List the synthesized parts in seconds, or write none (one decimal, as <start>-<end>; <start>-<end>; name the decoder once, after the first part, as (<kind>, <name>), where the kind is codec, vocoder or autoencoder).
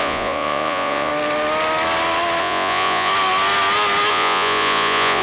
0.0-1.1 (vocoder, Vocos); 2.4-3.1; 4.1-5.2